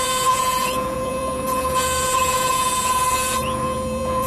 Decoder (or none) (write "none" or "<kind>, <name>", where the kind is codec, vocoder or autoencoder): vocoder, Vocos